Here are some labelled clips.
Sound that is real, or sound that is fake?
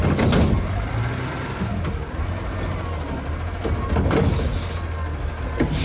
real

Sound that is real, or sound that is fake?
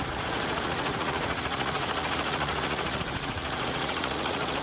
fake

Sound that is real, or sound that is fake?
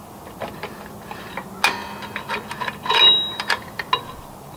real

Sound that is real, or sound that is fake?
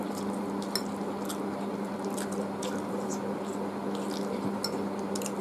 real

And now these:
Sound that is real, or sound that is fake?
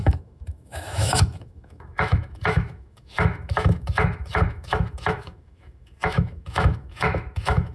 fake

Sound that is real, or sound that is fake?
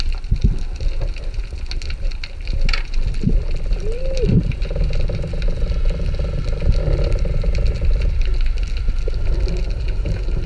real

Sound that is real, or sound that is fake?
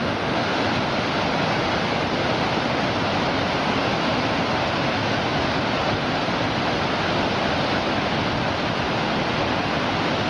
real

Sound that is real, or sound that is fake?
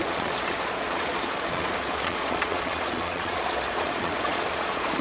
fake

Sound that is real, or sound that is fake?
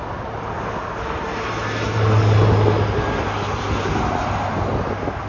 real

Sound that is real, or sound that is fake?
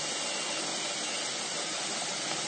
real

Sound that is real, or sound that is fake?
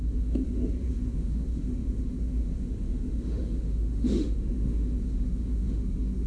fake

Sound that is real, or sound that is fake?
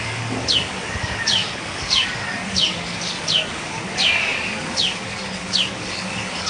fake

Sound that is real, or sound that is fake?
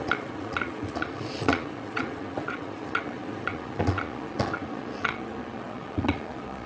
fake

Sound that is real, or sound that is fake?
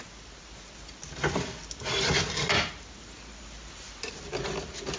real